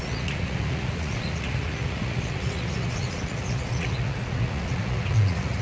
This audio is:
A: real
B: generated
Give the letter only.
B